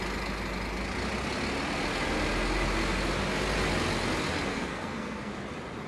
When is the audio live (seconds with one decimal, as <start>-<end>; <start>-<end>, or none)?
0.0-4.5; 5.3-5.9